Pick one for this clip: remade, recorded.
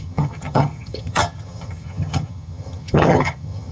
remade